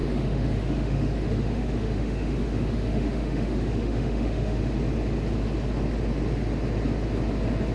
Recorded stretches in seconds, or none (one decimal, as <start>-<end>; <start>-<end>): 4.6-7.7